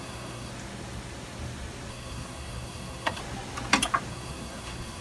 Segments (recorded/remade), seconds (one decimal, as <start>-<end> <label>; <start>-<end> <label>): 0.0-0.5 remade; 0.5-1.9 recorded; 1.9-3.2 remade; 3.2-4.1 recorded; 4.1-5.0 remade